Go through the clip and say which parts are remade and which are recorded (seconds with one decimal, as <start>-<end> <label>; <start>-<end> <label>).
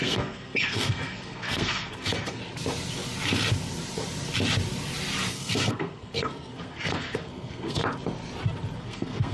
0.0-2.4 remade; 2.4-5.3 recorded; 5.3-7.8 remade; 7.8-8.8 recorded; 8.8-9.3 remade